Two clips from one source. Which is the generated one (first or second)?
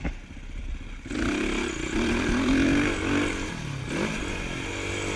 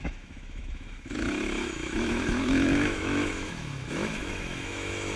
second